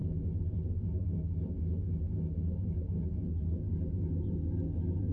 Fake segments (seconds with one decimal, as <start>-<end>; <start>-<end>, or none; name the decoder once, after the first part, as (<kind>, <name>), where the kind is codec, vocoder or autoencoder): none